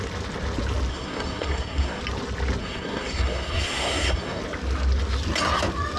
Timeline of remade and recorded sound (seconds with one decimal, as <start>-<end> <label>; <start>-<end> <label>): 0.0-0.9 recorded; 0.9-2.0 remade; 2.0-2.6 recorded; 2.6-4.4 remade; 4.4-6.0 recorded